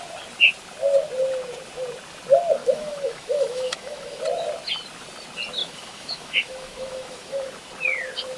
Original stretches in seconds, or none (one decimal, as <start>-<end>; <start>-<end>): 0.0-2.6; 4.2-5.6; 7.5-8.4